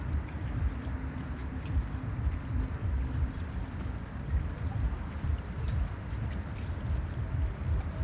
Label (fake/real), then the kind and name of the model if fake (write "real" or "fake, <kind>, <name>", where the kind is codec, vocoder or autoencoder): fake, vocoder, BigVGAN v2